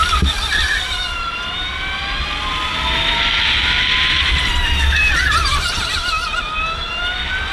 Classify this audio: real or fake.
real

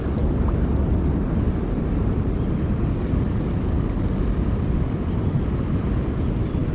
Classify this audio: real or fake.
real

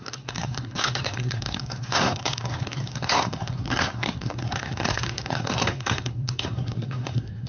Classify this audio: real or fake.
fake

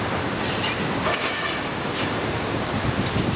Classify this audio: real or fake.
fake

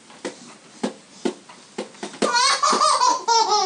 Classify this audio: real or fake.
real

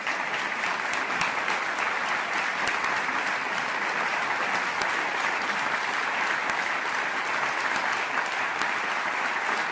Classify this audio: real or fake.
real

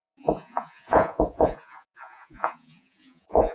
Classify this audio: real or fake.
fake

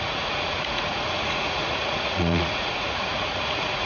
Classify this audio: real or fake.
fake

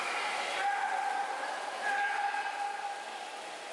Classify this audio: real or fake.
real